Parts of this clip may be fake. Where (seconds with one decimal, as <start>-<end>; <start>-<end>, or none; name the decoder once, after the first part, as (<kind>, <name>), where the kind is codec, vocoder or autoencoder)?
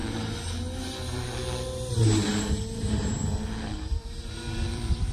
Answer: 1.9-5.1 (vocoder, BigVGAN v2)